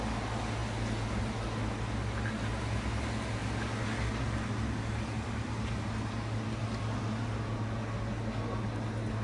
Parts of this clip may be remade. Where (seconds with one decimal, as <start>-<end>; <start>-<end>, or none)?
none